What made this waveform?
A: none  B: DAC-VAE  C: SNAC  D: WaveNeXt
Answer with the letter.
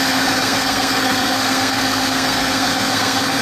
C